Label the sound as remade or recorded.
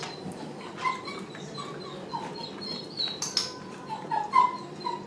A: recorded